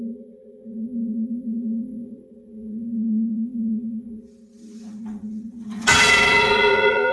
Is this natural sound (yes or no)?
no